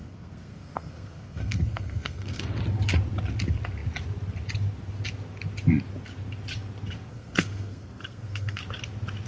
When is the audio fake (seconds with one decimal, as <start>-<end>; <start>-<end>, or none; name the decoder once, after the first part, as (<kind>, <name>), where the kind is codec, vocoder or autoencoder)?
0.0-2.4 (codec, SNAC); 7.1-8.6